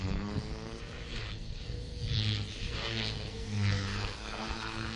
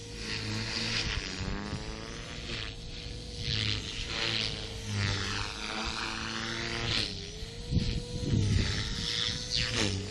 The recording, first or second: second